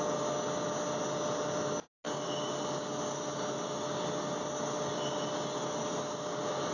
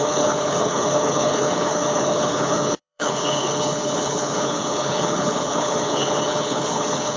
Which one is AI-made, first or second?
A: second